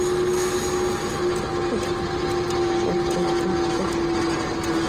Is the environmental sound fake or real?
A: real